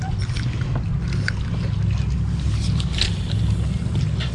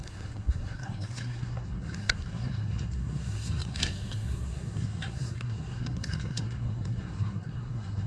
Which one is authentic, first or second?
first